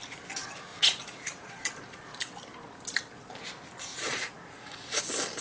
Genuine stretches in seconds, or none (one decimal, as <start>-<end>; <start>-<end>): 0.0-0.7; 1.5-3.9; 5.0-5.4